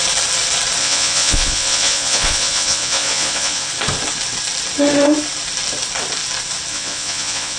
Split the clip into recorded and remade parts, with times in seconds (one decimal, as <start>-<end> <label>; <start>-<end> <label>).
0.0-0.8 recorded; 0.8-3.7 remade; 3.7-6.7 recorded; 6.7-7.6 remade